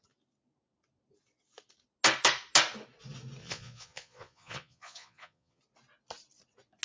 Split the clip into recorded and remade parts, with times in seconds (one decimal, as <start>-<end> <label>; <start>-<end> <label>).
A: 0.0-3.4 recorded; 3.4-5.6 remade; 5.6-6.8 recorded